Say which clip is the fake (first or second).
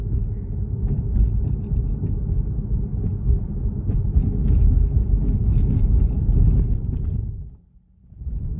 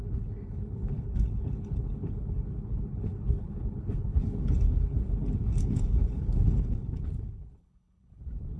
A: second